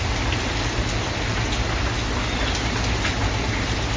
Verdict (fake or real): real